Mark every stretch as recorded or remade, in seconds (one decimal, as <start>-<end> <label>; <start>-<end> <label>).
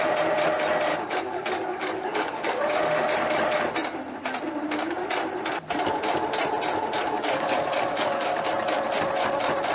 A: 0.0-0.9 recorded; 0.9-3.0 remade; 3.0-7.0 recorded; 7.0-8.5 remade; 8.5-9.7 recorded